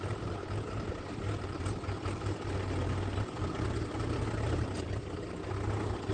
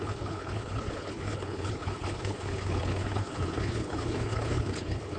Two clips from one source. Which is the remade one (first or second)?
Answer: second